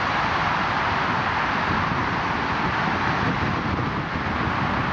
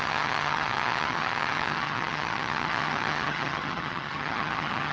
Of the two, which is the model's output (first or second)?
second